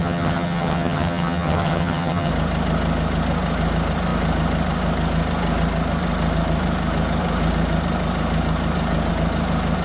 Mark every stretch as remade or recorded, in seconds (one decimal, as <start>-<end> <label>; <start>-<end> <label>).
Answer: 0.0-2.3 remade; 2.3-9.8 recorded